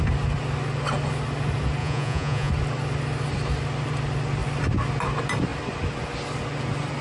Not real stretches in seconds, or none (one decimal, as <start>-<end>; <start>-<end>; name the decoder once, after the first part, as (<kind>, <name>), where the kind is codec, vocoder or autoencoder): 1.8-2.5 (vocoder, Vocos)